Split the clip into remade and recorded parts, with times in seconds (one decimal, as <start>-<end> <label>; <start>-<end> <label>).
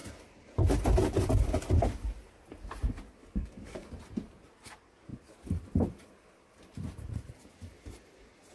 0.0-3.2 recorded; 3.2-3.9 remade; 3.9-8.5 recorded